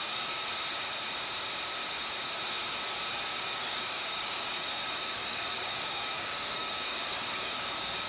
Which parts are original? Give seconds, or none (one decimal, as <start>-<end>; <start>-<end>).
0.5-3.1